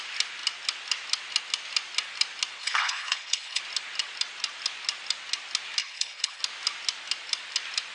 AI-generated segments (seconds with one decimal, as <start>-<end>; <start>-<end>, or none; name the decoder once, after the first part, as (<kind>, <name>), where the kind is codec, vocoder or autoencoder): 2.6-3.6 (codec, HILCodec); 5.8-6.4